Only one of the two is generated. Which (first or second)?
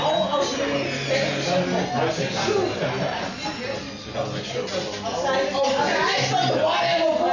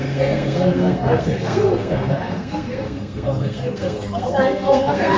second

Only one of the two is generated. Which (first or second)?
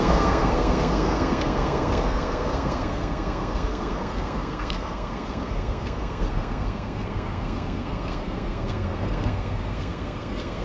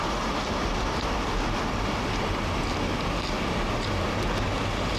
first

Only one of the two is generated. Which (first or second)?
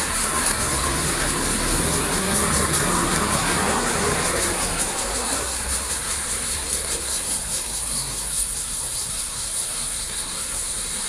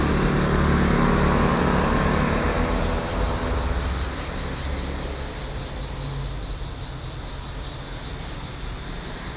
first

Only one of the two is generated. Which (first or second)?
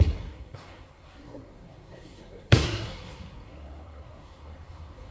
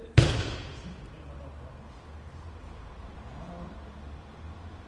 first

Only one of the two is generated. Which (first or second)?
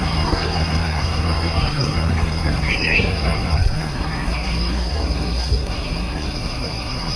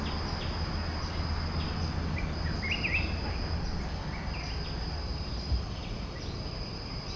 first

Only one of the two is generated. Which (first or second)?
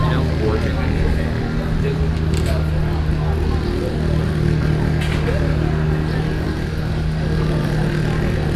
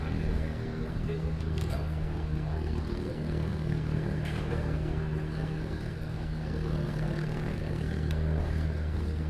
second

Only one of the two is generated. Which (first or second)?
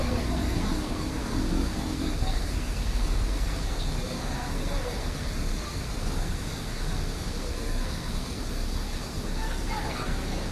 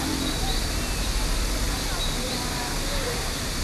first